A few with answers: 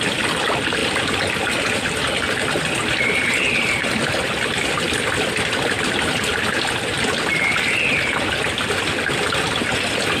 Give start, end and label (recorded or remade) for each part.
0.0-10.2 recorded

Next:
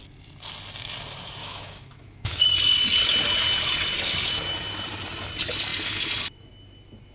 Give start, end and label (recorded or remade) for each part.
0.0-1.4 recorded; 1.4-2.4 remade; 2.4-7.1 recorded

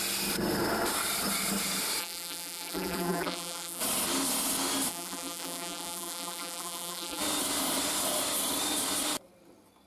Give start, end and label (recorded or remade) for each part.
0.0-2.0 recorded; 2.0-3.8 remade; 3.8-4.9 recorded; 4.9-7.2 remade; 7.2-9.9 recorded

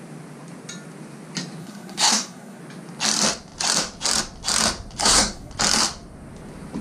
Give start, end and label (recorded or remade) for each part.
0.0-1.6 recorded; 1.6-2.6 remade; 2.6-5.0 recorded; 5.0-5.5 remade; 5.5-6.8 recorded

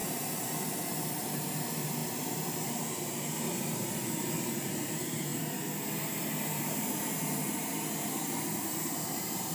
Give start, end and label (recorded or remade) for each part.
0.0-0.9 recorded; 0.9-5.3 remade; 5.3-6.0 recorded; 6.0-9.5 remade

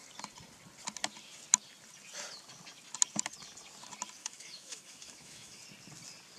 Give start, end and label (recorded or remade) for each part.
0.0-4.2 recorded; 4.2-5.6 remade; 5.6-6.4 recorded